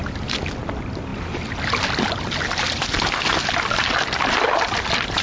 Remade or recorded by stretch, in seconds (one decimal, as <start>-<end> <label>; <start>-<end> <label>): 0.0-5.2 recorded